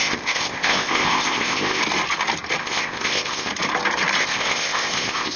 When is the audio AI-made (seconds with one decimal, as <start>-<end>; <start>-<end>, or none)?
0.0-1.8; 2.6-3.5; 4.2-5.4

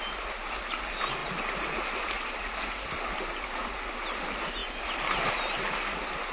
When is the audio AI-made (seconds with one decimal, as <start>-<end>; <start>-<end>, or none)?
none

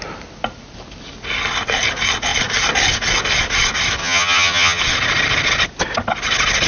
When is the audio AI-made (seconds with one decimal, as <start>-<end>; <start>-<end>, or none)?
4.0-4.8

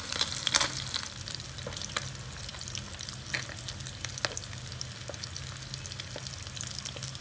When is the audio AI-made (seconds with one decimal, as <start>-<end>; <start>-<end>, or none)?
none

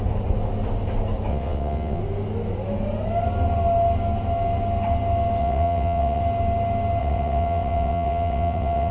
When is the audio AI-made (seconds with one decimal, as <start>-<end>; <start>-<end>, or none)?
1.3-2.0; 5.4-6.2; 7.0-8.9

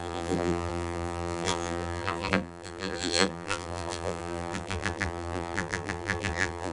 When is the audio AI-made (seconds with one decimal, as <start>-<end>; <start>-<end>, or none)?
0.0-6.7

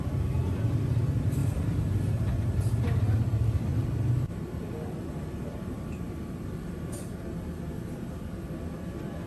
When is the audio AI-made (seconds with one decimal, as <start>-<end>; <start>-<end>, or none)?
1.4-2.0

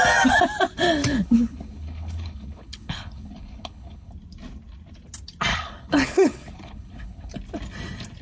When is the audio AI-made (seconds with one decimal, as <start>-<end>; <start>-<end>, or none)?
1.1-4.1; 5.5-7.3